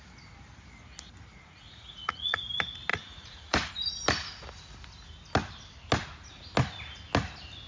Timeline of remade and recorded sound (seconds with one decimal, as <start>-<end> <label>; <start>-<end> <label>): 0.0-1.3 recorded; 1.3-2.4 remade; 2.4-2.9 recorded; 2.9-3.7 remade; 3.7-7.7 recorded